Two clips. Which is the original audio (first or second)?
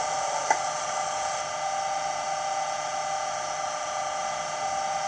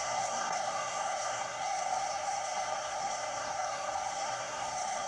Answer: first